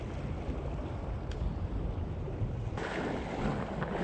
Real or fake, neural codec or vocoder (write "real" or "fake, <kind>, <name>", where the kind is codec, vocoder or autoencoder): real